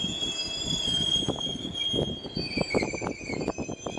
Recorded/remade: recorded